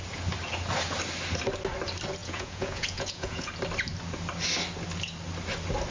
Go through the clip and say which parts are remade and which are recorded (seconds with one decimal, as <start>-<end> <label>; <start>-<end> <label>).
0.0-2.2 recorded; 2.2-3.5 remade; 3.5-5.9 recorded